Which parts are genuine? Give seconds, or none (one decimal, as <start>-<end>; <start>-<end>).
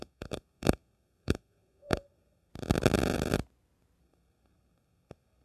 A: 2.5-4.0